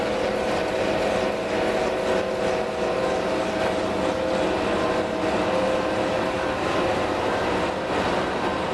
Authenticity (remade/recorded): recorded